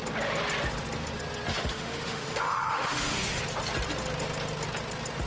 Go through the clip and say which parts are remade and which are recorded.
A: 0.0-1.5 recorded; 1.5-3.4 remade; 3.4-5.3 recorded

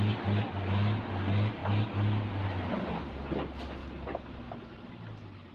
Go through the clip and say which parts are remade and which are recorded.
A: 0.0-5.5 recorded

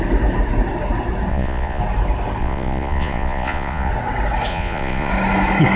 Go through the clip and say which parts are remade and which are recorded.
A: 0.0-1.3 recorded; 1.3-1.8 remade; 1.8-2.4 recorded; 2.4-3.9 remade; 3.9-4.5 recorded; 4.5-5.1 remade; 5.1-5.8 recorded